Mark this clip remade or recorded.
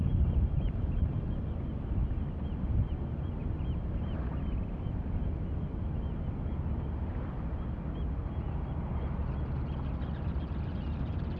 recorded